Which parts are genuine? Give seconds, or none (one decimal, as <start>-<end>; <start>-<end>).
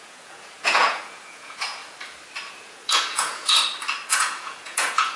1.8-2.5; 3.6-4.1